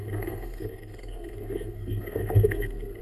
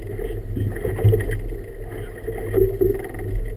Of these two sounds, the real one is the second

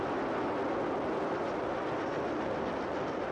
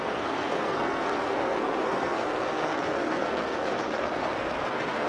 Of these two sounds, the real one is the first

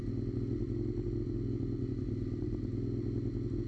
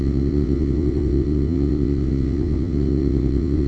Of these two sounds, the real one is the first